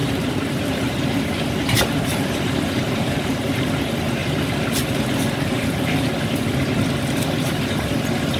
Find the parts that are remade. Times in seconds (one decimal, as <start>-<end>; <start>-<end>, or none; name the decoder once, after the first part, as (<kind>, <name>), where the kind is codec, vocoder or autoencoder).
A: 0.0-3.7 (vocoder, BigVGAN v2)